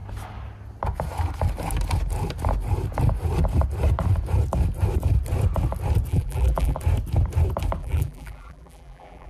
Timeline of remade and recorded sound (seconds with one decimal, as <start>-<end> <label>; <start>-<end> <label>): 0.0-6.1 recorded; 6.1-6.8 remade; 6.8-7.8 recorded; 7.8-9.3 remade